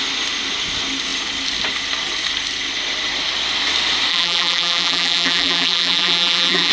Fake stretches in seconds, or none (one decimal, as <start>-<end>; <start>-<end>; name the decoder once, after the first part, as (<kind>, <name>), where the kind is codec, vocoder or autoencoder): 4.1-6.7 (vocoder, BigVGAN v2)